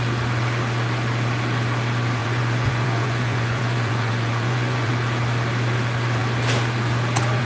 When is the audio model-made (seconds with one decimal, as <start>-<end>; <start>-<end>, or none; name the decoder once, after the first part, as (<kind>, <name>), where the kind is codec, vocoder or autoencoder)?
2.2-4.9 (vocoder, Vocos)